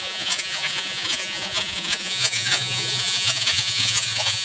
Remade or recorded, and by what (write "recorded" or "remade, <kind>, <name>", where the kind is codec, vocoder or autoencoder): remade, vocoder, Vocos